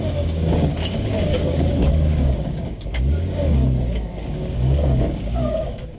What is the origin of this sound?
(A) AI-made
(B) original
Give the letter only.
A